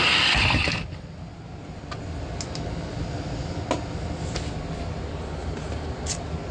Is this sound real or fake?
real